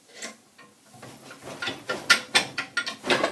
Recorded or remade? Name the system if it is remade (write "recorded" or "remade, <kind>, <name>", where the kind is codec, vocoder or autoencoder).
recorded